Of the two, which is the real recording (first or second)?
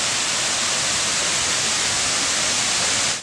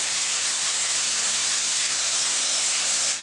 first